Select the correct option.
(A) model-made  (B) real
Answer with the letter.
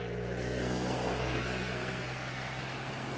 A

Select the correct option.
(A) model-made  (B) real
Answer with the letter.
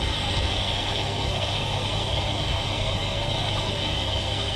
A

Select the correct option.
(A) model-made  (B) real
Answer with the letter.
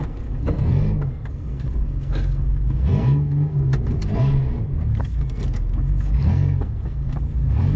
A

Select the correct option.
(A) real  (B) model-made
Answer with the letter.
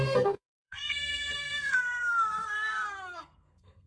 B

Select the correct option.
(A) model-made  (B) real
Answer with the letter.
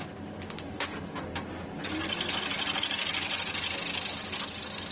B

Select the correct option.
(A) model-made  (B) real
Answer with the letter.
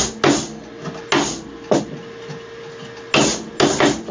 B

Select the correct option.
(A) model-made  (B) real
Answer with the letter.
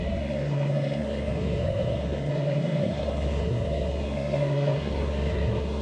A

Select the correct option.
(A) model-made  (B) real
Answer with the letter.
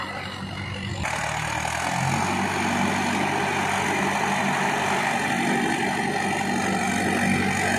B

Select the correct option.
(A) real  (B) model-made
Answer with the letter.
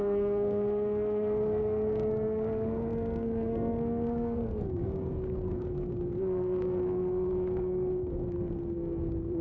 B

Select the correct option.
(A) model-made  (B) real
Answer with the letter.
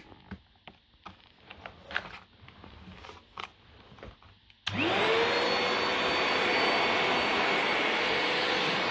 B